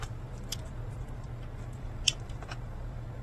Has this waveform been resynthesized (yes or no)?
yes